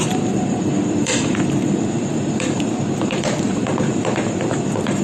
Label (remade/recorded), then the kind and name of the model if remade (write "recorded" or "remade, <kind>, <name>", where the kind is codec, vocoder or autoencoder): remade, vocoder, BigVGAN v2